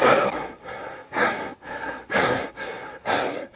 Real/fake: fake